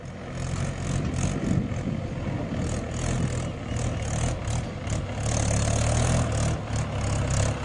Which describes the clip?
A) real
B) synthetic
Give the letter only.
A